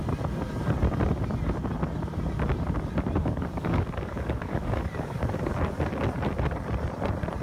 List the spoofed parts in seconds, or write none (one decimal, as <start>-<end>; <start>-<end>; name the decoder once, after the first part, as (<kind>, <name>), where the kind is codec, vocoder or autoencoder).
3.2-5.5 (codec, DAC)